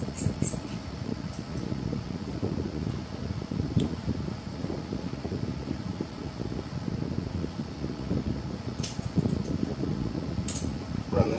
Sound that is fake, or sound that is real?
fake